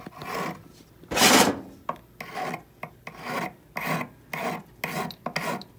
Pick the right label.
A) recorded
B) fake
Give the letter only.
A